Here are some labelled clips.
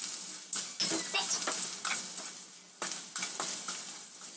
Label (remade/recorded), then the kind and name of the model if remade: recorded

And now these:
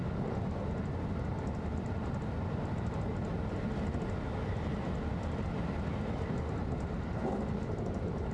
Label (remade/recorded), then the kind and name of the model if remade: recorded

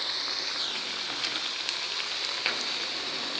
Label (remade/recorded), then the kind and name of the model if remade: recorded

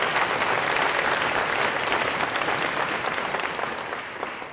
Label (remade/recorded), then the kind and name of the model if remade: recorded